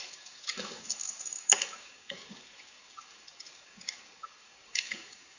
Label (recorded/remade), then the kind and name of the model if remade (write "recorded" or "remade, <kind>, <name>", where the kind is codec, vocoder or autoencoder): remade, codec, DAC